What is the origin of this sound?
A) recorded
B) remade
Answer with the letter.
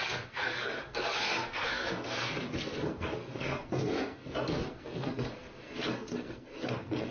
B